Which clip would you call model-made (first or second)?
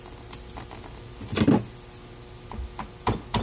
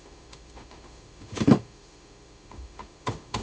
second